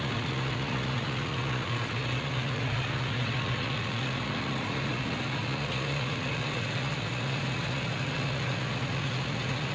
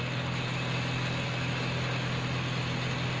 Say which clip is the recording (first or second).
second